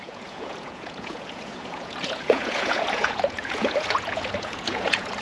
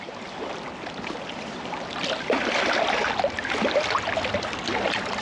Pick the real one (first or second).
second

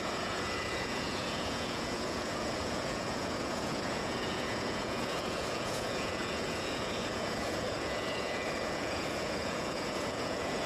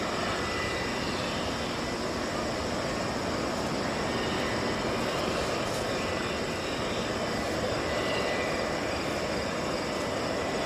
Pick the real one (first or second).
second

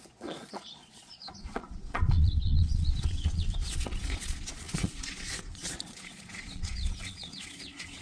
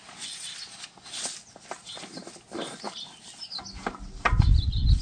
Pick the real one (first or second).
second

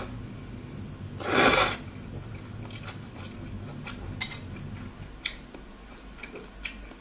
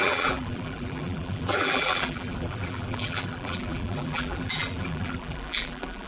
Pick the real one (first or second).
first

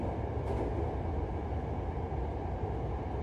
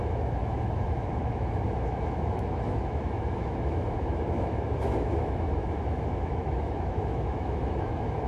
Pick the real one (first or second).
first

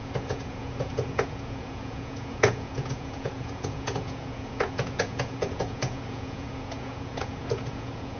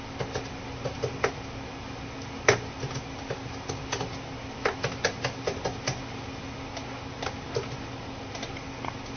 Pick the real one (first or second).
second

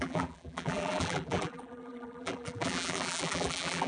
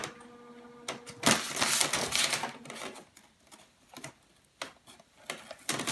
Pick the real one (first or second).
second